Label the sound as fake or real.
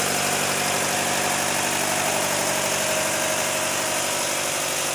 real